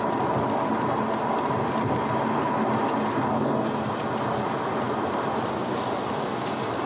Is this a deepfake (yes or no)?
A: no